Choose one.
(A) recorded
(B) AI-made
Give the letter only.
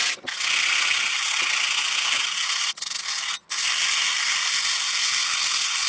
A